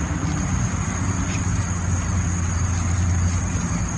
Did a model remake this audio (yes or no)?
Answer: no